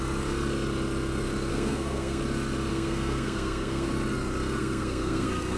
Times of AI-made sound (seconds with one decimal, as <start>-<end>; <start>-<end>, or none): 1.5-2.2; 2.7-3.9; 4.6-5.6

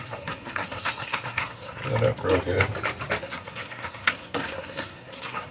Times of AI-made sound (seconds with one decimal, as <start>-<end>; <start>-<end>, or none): 0.0-1.8; 3.2-5.5

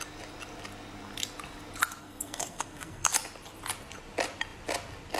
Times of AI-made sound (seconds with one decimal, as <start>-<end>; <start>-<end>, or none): 2.0-3.1